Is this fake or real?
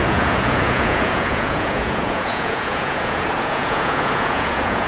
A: fake